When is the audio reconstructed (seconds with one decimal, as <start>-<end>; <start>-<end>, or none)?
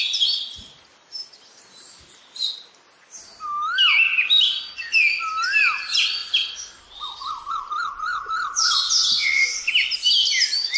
none